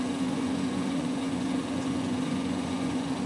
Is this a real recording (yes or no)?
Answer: no